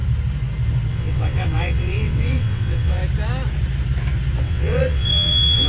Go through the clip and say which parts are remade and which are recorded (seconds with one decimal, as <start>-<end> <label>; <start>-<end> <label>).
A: 0.0-0.9 recorded; 0.9-3.0 remade; 3.0-4.4 recorded; 4.4-5.7 remade